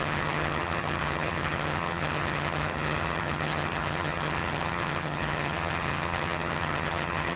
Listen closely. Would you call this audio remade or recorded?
remade